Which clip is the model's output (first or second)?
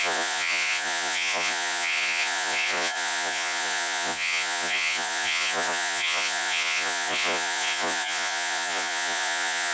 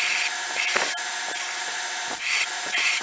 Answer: first